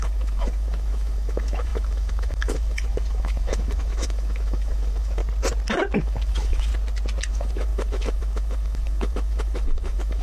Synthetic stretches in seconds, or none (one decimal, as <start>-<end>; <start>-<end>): 0.0-5.2; 6.0-6.7; 7.3-10.2